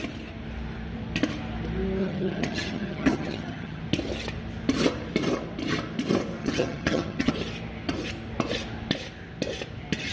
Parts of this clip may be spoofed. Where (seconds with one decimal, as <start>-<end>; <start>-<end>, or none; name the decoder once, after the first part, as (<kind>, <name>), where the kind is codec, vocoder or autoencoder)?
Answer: 2.0-3.8 (vocoder, HiFi-GAN); 6.4-7.3